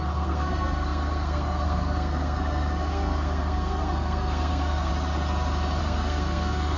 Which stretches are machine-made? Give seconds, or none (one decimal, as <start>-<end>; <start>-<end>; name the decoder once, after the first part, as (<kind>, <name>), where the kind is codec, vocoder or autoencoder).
0.0-4.9 (codec, SNAC); 5.8-6.8